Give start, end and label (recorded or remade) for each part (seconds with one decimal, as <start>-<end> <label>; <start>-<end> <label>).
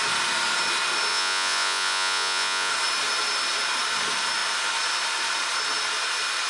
0.0-1.1 recorded; 1.1-2.7 remade; 2.7-6.5 recorded